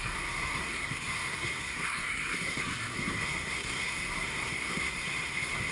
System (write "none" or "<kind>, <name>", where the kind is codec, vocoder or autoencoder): codec, SNAC